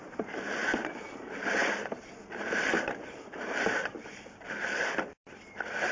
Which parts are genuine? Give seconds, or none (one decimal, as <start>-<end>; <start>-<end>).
0.6-1.1